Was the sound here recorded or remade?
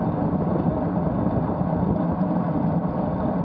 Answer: recorded